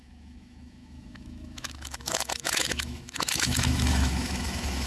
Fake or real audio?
fake